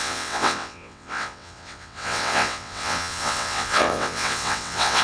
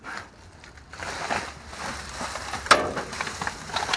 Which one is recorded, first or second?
second